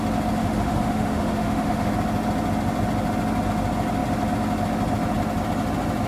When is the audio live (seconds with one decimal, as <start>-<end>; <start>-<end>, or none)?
0.0-0.4; 1.9-6.1